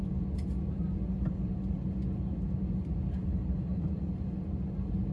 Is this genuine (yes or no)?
yes